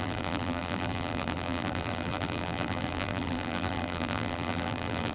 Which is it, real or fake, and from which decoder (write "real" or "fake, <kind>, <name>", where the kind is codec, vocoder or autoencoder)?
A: fake, vocoder, BigVGAN v2